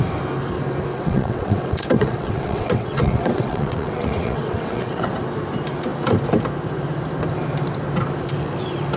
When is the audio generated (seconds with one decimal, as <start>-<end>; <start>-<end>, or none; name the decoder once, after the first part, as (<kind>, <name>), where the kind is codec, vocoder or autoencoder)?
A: 0.9-5.1 (vocoder, WaveNeXt)